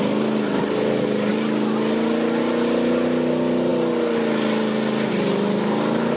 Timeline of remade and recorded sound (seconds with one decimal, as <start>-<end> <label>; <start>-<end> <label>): 0.0-6.2 recorded